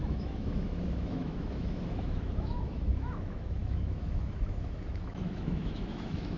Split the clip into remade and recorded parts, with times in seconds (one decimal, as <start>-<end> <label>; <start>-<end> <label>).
0.0-6.4 remade